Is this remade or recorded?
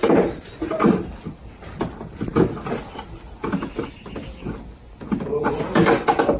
recorded